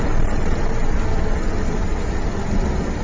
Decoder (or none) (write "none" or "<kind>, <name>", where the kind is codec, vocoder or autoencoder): none